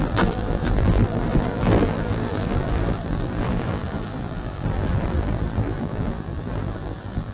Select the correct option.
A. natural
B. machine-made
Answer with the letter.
B